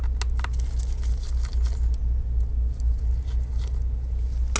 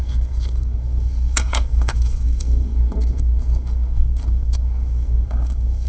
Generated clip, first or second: second